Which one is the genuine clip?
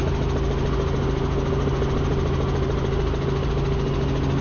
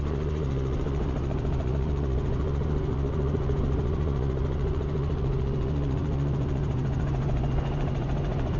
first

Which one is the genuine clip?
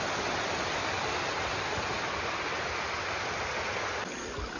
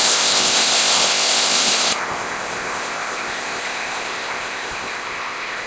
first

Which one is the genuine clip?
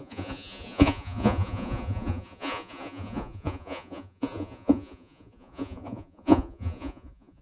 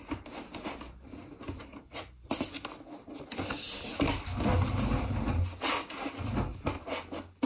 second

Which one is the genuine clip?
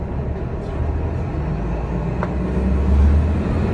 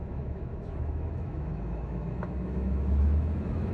first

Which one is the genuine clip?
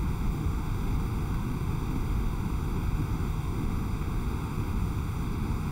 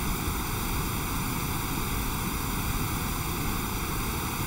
second